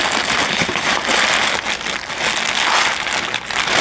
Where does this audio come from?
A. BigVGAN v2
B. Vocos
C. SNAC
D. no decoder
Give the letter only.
D